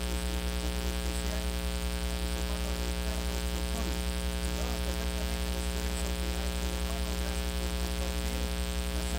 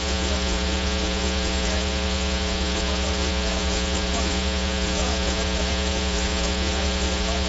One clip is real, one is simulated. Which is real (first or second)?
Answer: first